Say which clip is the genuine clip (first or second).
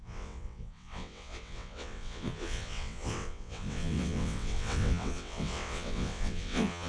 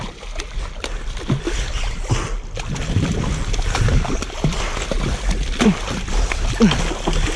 second